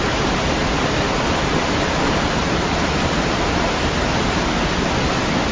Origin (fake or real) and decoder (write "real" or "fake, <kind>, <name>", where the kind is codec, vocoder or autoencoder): real